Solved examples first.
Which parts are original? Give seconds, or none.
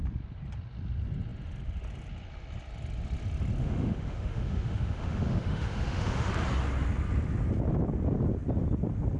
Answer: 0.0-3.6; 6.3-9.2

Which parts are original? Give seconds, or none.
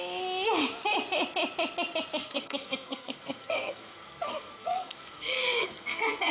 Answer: 0.0-2.2